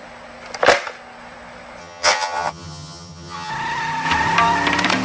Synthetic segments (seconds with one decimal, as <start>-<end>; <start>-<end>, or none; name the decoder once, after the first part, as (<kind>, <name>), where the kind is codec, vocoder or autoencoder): 1.8-3.5 (vocoder, HiFi-GAN)